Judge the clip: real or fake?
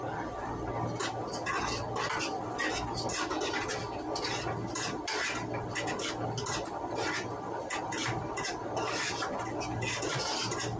real